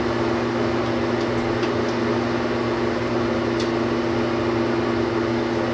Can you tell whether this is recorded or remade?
recorded